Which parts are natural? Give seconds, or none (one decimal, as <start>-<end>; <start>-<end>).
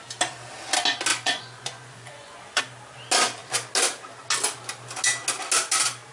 0.0-1.1; 2.6-6.1